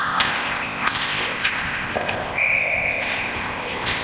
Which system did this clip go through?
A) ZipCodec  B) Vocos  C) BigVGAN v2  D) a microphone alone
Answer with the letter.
A